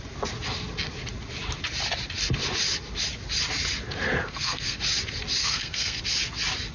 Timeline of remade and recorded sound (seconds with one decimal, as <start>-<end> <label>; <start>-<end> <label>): 0.0-4.2 recorded; 4.2-4.8 remade; 4.8-5.4 recorded; 5.4-6.0 remade; 6.0-6.7 recorded